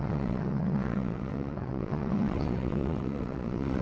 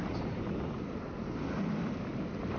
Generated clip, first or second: first